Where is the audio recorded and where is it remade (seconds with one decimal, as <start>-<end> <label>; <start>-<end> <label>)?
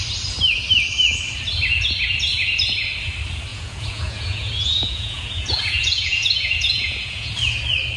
0.0-3.5 recorded; 3.5-7.3 remade; 7.3-8.0 recorded